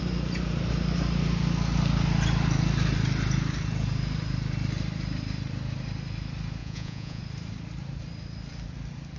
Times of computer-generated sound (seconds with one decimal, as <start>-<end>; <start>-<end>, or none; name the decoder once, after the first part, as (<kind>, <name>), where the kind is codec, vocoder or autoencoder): 6.6-7.2 (vocoder, Vocos)